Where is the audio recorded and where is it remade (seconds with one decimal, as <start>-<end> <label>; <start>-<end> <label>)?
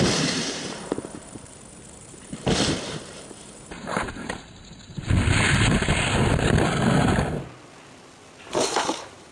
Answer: 0.0-4.6 remade; 4.6-8.4 recorded; 8.4-9.3 remade